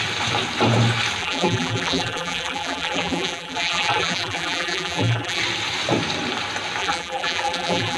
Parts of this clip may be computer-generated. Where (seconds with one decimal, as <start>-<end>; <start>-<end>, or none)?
1.2-5.4; 6.8-8.0